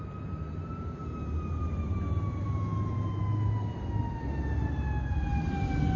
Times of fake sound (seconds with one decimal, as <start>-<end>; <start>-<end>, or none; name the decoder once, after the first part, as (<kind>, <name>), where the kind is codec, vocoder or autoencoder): none